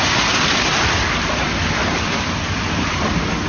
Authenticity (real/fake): real